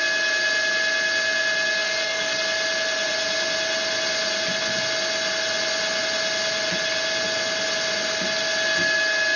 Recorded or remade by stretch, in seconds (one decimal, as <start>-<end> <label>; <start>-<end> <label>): 0.0-1.8 recorded; 1.8-2.4 remade; 2.4-9.4 recorded